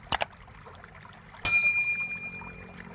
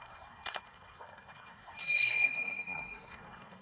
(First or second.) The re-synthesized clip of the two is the second